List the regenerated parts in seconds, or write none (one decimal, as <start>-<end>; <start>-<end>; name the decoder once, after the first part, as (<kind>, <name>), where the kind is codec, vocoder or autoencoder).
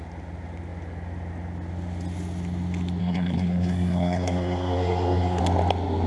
3.0-5.4 (codec, SNAC)